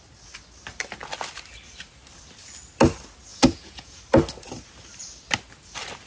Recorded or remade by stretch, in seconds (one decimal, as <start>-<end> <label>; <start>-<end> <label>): 0.0-3.3 recorded; 3.3-4.0 remade; 4.0-6.1 recorded